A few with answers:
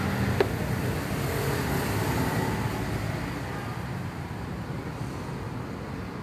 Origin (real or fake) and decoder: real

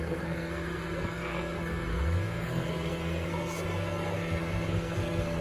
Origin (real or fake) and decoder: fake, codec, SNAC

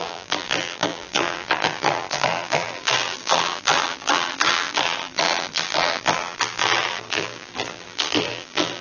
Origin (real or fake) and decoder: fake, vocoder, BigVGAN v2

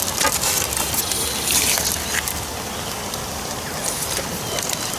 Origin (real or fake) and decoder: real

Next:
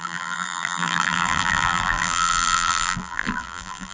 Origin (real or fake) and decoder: fake, vocoder, BigVGAN v2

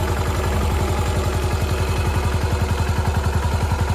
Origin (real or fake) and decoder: real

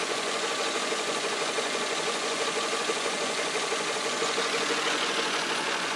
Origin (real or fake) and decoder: fake, vocoder, Vocos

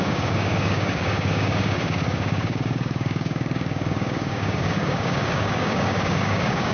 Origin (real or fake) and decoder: fake, codec, DAC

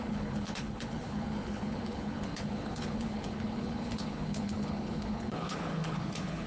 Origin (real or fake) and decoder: fake, codec, HILCodec